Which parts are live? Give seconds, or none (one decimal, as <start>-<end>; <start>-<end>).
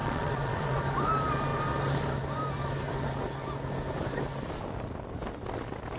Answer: 0.8-6.0